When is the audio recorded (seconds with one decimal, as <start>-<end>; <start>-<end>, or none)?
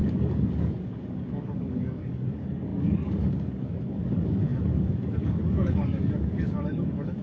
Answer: none